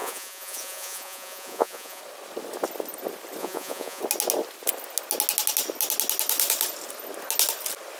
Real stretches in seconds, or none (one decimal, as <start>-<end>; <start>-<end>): 2.0-3.4; 4.0-8.0